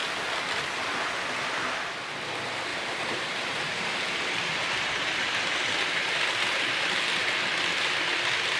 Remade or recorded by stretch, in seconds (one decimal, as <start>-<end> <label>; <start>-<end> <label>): 0.0-2.7 recorded; 2.7-5.2 remade; 5.2-8.6 recorded